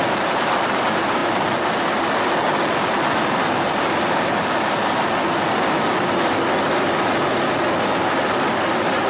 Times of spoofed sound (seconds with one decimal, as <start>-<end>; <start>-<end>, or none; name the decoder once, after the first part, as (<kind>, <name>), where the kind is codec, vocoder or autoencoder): none